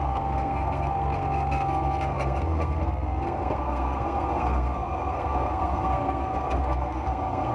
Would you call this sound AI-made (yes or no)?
yes